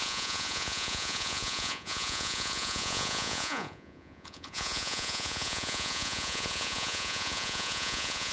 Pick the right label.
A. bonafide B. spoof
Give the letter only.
B